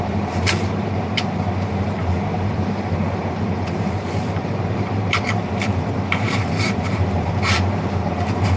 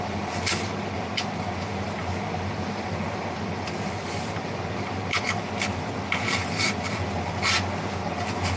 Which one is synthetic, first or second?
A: first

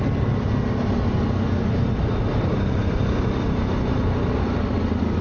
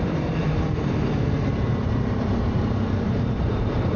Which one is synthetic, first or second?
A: second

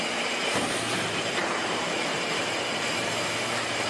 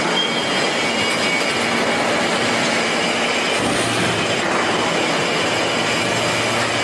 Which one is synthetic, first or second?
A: first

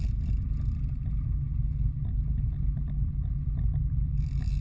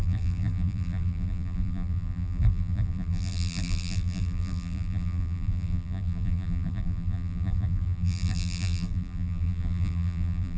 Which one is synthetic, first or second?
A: second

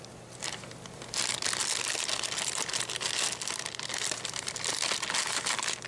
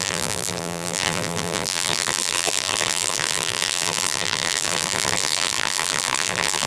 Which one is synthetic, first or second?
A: second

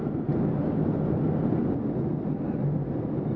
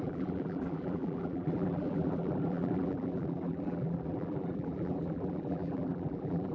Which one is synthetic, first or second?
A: second